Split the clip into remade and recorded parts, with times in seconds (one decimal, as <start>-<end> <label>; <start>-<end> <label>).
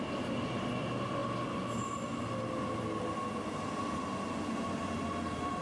0.0-5.6 recorded